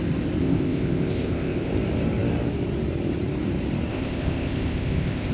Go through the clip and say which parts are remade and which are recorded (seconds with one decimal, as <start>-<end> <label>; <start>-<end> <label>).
0.0-0.4 recorded; 0.4-1.7 remade; 1.7-3.9 recorded; 3.9-5.3 remade